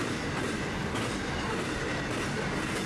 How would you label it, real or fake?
real